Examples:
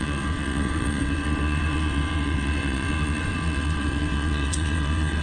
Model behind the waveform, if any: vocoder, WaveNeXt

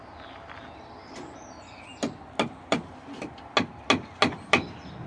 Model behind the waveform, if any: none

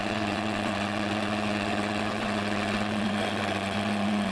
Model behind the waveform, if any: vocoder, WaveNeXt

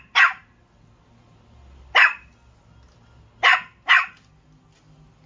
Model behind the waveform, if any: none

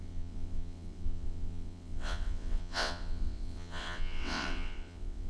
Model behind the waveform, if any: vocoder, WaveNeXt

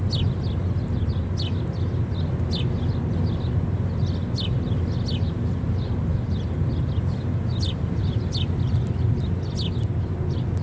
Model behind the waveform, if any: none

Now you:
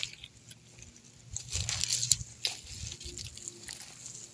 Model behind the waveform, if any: none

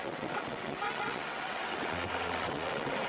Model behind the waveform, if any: vocoder, WaveNeXt